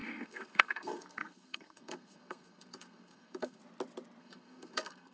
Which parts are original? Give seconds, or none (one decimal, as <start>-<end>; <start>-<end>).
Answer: 3.6-4.2